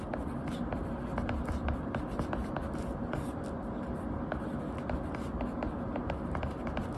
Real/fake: real